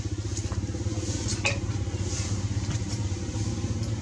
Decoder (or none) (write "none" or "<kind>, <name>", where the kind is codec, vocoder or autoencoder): none